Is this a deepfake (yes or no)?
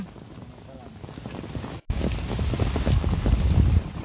no